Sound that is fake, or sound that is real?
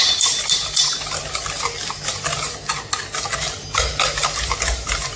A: real